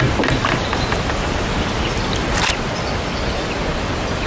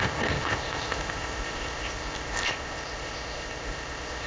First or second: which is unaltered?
first